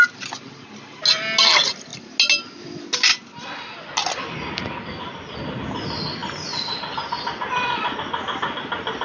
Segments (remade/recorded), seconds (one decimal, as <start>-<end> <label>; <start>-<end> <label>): 0.0-9.0 recorded